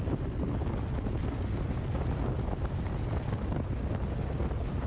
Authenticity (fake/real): real